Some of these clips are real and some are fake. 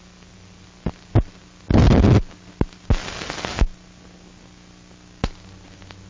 real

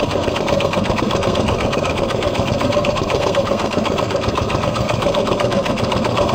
fake